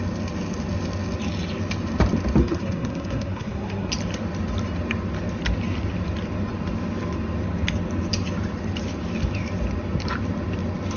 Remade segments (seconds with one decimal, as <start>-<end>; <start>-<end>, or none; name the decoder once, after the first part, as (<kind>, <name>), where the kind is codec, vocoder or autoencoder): 2.4-3.9 (codec, SNAC)